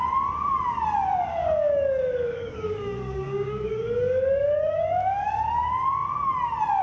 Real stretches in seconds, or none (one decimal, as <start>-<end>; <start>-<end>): 0.0-1.3; 5.4-6.8